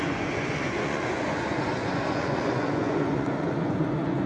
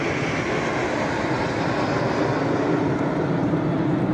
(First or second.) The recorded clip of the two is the second